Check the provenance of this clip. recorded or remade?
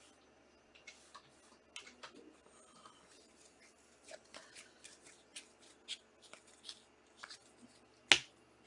recorded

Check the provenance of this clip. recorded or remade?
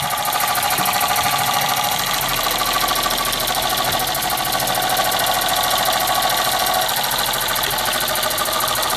recorded